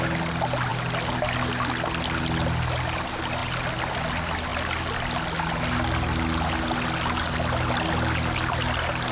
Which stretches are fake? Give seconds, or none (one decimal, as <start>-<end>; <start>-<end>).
none